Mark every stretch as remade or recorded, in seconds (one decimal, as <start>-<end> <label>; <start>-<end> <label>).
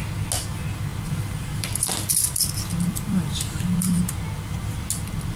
0.0-0.9 recorded; 0.9-4.1 remade; 4.1-5.4 recorded